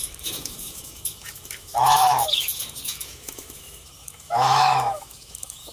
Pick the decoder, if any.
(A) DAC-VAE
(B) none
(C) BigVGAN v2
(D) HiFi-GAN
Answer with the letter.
A